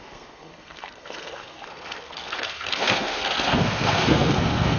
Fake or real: fake